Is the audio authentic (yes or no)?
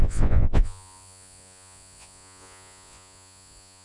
no